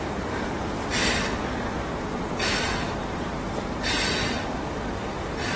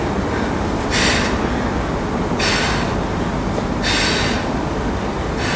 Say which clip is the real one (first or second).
second